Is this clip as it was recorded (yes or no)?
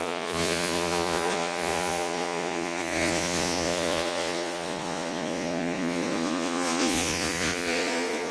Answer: no